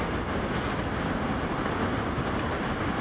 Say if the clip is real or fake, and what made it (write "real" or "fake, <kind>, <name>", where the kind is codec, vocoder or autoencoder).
real